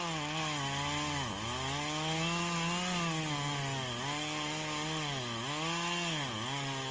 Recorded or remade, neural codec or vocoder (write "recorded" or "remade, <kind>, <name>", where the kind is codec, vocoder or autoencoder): recorded